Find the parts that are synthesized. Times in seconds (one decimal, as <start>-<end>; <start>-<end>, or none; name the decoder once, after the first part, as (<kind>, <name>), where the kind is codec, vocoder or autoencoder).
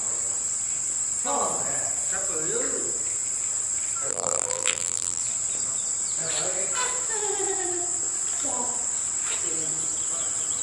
4.1-5.2 (vocoder, BigVGAN v2)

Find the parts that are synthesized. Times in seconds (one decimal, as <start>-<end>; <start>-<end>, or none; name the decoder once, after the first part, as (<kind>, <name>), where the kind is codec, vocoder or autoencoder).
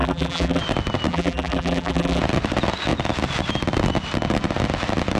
0.0-0.6 (vocoder, BigVGAN v2); 1.1-2.2